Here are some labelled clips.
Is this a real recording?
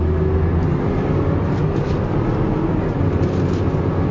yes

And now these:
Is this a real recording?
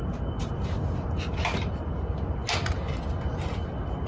yes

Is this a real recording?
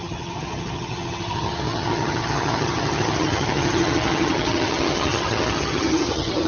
no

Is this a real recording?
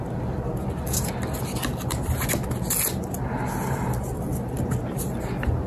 yes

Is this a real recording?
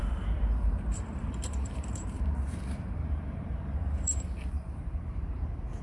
no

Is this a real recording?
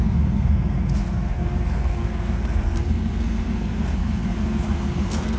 no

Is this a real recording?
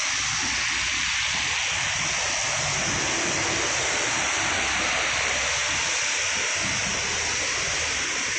yes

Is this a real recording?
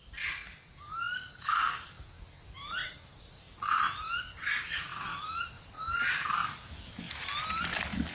yes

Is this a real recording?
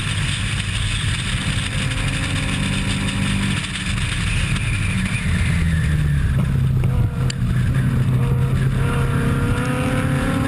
yes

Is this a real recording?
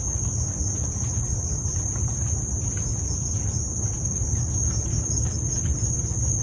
yes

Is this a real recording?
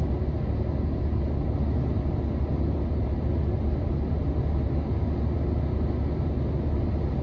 yes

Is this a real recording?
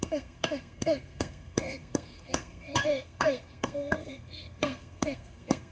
no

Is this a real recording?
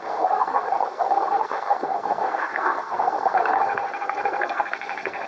no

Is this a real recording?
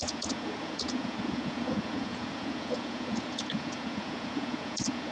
no